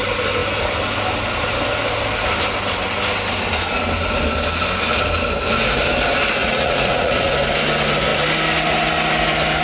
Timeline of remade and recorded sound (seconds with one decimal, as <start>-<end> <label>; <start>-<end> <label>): 0.0-6.4 recorded; 6.4-7.3 remade; 7.3-9.6 recorded